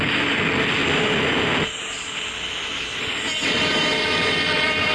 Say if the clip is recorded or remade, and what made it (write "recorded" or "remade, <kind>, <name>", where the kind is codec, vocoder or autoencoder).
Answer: recorded